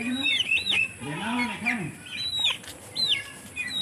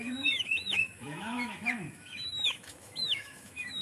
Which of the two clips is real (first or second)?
first